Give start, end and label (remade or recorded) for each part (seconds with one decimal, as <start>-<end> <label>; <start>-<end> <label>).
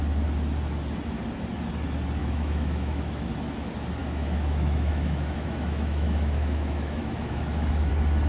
0.0-2.2 recorded; 2.2-3.3 remade; 3.3-4.0 recorded; 4.0-7.9 remade; 7.9-8.3 recorded